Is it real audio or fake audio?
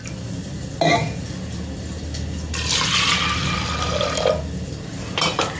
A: real